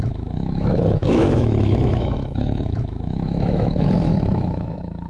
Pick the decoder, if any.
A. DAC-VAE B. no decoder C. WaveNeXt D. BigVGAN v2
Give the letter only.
A